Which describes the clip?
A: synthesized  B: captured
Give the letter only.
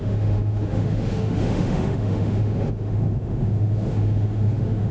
A